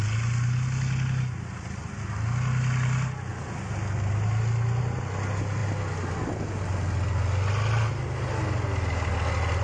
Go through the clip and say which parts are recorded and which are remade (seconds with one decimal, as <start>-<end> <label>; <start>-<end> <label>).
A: 0.0-9.6 recorded